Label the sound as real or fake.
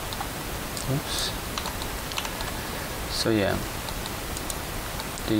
real